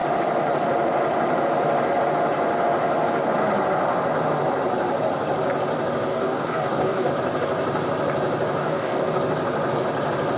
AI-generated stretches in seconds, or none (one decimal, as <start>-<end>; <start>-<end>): 6.1-7.1; 8.6-9.2